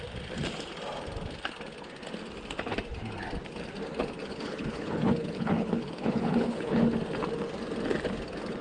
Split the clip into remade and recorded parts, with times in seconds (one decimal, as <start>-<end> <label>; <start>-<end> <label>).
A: 0.0-4.3 recorded; 4.3-6.8 remade; 6.8-8.6 recorded